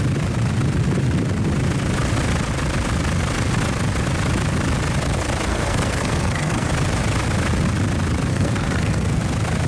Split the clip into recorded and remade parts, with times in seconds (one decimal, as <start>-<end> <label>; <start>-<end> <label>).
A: 0.0-5.5 recorded; 5.5-6.7 remade; 6.7-8.3 recorded; 8.3-9.2 remade; 9.2-9.7 recorded